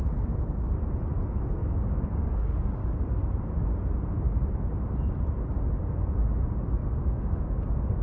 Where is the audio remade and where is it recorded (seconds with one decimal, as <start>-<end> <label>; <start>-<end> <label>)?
0.0-1.6 recorded; 1.6-2.9 remade; 2.9-6.8 recorded; 6.8-7.6 remade; 7.6-8.0 recorded